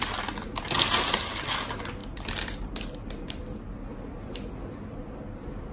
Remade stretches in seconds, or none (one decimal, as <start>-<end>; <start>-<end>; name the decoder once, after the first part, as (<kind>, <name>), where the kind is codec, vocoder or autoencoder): none